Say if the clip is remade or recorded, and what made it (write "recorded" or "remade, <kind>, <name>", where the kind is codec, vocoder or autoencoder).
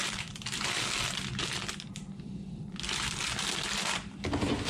remade, vocoder, BigVGAN v2